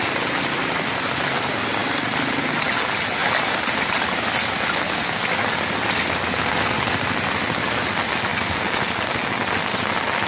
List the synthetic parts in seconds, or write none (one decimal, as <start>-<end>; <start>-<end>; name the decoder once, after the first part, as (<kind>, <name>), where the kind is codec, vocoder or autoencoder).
none